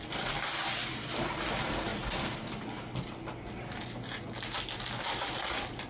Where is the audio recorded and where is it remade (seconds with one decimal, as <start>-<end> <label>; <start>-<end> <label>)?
0.0-5.9 recorded